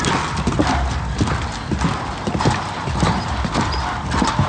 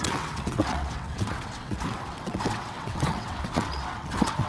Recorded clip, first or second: first